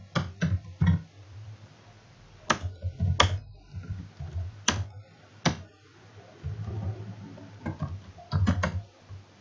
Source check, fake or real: real